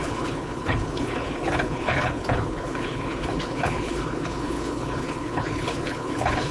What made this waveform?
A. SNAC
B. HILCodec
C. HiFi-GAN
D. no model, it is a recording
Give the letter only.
B